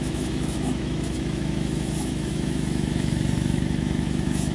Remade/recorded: remade